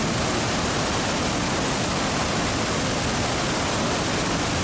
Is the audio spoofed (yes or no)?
no